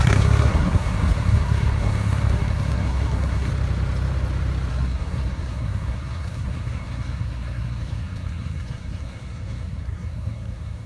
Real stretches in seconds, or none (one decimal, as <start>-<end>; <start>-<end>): 3.5-4.7

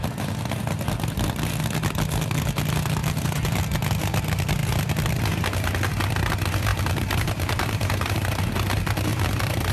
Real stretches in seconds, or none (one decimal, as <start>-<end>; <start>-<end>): 0.0-3.0; 3.6-6.7; 8.4-9.1

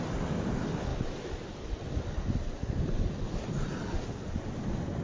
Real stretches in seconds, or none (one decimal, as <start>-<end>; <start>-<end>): 0.0-5.0

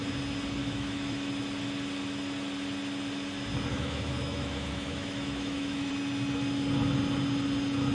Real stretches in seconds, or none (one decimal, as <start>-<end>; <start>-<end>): 0.0-0.6; 1.3-3.7; 5.9-7.9

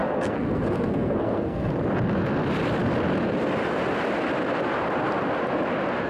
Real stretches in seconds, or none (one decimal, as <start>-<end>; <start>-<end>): 1.7-6.1